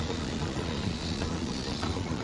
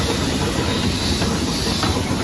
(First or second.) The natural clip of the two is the second